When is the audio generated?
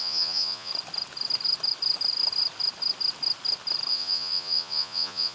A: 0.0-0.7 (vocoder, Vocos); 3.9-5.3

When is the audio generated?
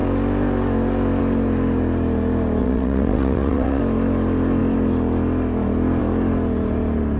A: 2.6-3.8 (vocoder, WaveNeXt)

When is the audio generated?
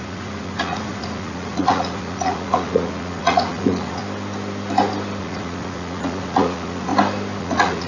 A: 0.0-4.0 (vocoder, Vocos); 5.2-6.9; 7.4-7.9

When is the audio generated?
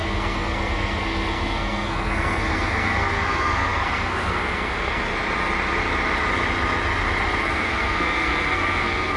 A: 0.0-5.1 (codec, SNAC); 7.4-9.2